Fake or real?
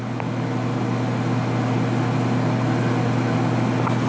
real